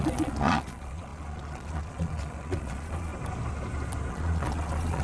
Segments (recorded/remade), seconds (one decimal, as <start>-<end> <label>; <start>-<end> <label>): 0.0-3.1 remade; 3.1-4.1 recorded; 4.1-5.0 remade